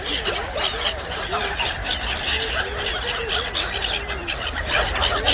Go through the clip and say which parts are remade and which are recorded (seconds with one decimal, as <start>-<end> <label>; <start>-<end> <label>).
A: 0.0-5.3 recorded